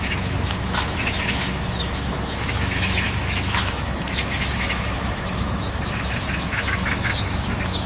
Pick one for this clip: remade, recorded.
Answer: remade